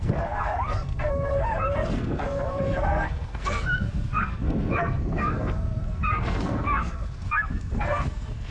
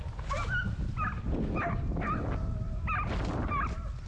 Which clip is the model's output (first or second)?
first